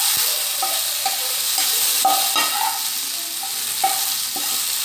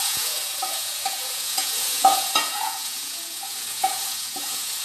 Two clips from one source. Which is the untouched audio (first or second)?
first